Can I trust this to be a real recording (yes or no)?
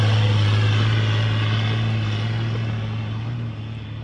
yes